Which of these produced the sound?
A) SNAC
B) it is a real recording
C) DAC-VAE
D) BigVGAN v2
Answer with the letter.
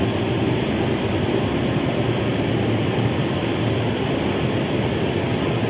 B